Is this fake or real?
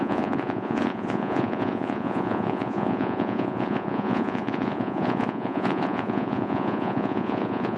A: fake